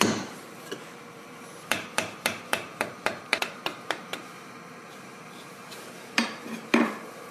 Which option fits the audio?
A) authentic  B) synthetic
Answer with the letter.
B